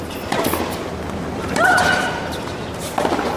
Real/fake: real